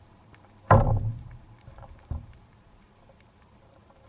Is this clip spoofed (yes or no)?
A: yes